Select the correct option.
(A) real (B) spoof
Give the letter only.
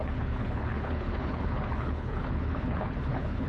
B